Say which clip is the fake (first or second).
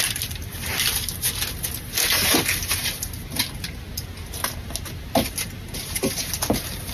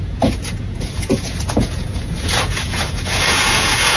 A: second